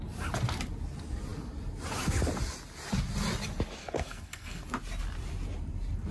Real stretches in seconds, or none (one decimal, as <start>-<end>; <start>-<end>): 0.0-3.8; 4.6-6.1